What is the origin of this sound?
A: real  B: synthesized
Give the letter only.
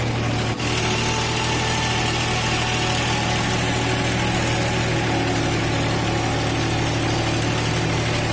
A